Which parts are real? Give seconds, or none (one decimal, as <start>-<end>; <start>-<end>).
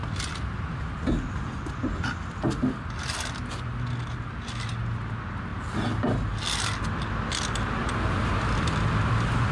0.0-9.5